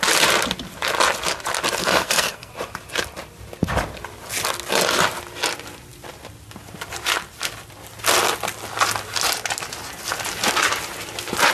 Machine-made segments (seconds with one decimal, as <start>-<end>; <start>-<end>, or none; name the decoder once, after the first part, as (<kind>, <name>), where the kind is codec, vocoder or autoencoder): 1.8-2.5 (codec, SNAC)